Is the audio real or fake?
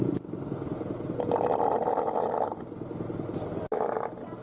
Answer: real